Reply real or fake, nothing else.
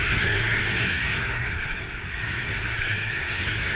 fake